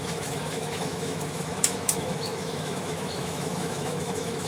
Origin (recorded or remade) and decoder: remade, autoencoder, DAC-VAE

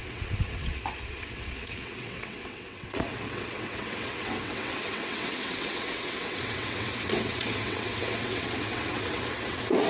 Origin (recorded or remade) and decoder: remade, vocoder, WaveNeXt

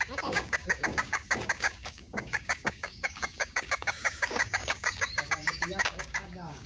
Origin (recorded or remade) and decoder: remade, codec, DAC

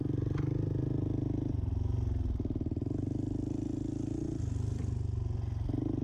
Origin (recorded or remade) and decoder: recorded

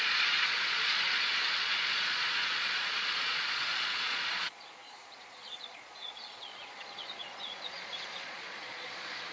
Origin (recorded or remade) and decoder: remade, vocoder, Vocos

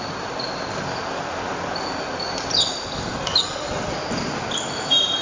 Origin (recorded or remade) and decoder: recorded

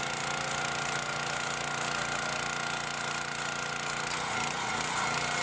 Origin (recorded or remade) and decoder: recorded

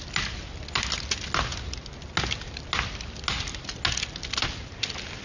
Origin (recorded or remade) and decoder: recorded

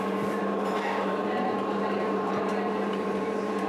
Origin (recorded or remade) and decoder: remade, vocoder, BigVGAN v2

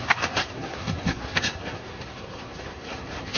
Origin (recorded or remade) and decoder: remade, codec, SNAC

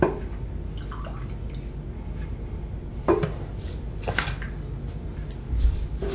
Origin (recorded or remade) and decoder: recorded